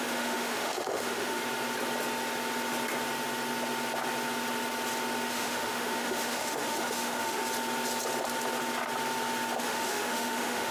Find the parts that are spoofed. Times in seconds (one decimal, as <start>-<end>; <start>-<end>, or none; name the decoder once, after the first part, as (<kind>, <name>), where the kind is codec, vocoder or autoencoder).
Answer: 0.0-1.4 (autoencoder, DAC-VAE); 5.3-7.4; 9.6-10.7